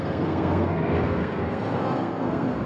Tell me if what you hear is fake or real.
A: fake